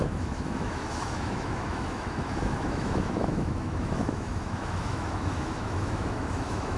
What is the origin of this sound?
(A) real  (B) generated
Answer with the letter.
B